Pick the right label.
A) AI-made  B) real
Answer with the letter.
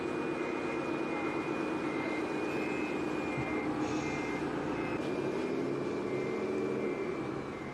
B